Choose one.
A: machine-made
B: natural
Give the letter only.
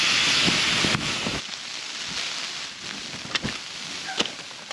B